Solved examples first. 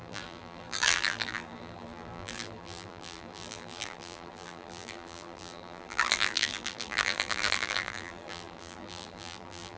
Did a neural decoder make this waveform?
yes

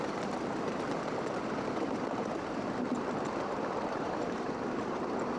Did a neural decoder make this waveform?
yes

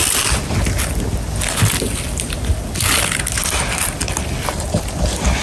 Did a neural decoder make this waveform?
no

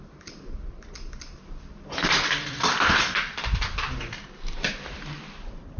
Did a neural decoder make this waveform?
yes